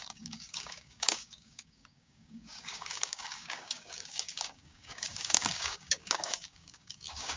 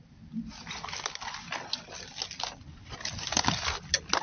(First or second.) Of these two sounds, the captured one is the second